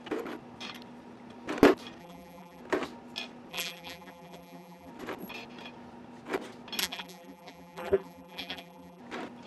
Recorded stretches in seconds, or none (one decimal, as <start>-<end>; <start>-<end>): 0.0-2.0; 2.6-3.5; 4.9-6.8; 9.0-9.5